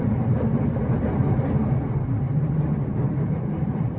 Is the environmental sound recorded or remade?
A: remade